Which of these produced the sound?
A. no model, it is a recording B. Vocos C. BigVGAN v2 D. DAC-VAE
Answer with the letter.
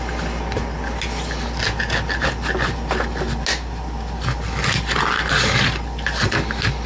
A